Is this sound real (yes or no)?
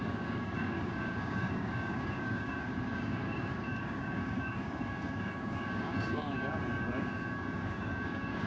no